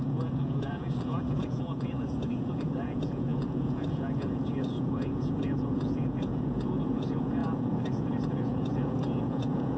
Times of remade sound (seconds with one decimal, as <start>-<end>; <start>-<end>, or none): 0.0-9.8